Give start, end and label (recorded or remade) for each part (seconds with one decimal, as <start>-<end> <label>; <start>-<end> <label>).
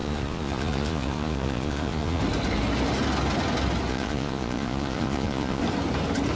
0.0-2.2 remade; 2.2-3.9 recorded; 3.9-5.6 remade; 5.6-6.4 recorded